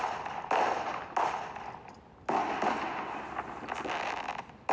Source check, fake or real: real